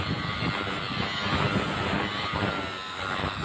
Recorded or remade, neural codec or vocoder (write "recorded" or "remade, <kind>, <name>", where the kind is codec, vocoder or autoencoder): recorded